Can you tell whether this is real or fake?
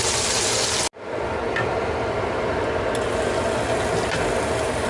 real